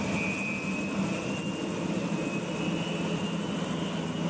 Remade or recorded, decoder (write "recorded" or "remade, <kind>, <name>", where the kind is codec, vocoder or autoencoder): recorded